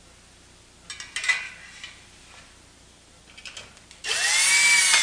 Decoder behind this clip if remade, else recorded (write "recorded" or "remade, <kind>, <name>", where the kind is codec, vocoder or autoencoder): recorded